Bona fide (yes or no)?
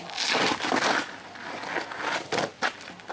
yes